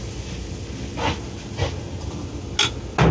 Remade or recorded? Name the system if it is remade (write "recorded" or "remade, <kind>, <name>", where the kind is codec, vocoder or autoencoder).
recorded